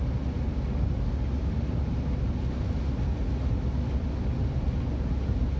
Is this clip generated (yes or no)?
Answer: no